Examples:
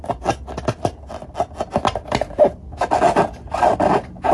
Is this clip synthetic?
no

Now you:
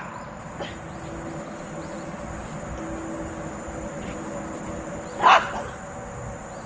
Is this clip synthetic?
no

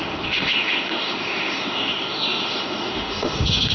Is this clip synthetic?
yes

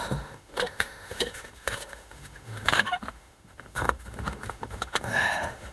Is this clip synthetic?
yes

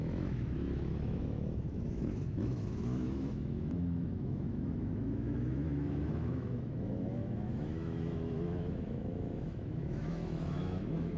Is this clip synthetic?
yes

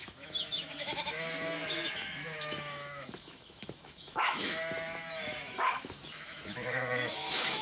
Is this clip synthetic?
yes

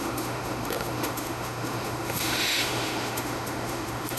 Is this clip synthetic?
yes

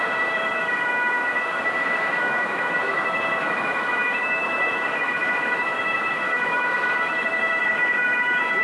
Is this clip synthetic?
yes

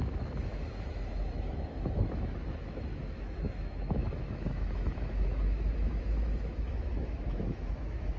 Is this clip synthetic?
yes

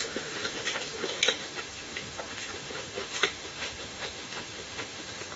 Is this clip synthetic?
yes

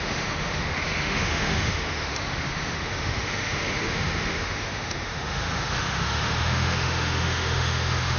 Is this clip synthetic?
yes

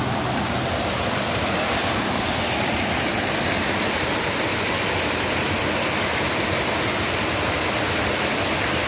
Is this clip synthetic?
no